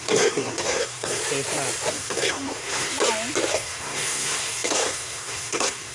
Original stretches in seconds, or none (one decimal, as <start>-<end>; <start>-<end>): 1.2-1.9; 2.9-3.5

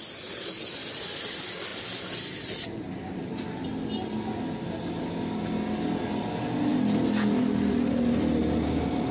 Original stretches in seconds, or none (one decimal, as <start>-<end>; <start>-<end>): 0.0-9.1

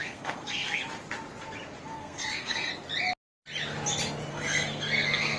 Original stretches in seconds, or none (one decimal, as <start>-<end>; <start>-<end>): 0.8-1.9; 2.7-4.3